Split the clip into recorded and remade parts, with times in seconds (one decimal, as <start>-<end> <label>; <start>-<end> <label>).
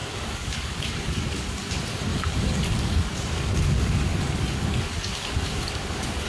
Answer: 0.0-1.7 remade; 1.7-2.1 recorded; 2.1-6.3 remade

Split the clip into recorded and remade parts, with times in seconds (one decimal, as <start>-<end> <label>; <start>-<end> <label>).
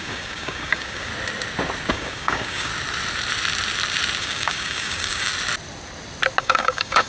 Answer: 0.0-1.1 remade; 1.1-1.9 recorded; 1.9-2.7 remade; 2.7-4.2 recorded; 4.2-5.3 remade; 5.3-6.4 recorded; 6.4-7.1 remade